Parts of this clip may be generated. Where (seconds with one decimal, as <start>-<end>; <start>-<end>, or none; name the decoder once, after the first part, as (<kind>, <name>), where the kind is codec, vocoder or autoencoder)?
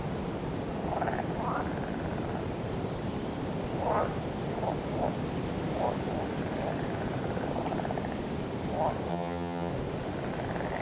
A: 9.1-9.7 (vocoder, HiFi-GAN)